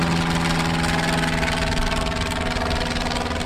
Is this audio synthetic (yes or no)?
no